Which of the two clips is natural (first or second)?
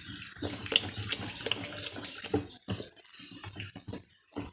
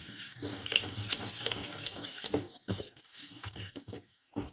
first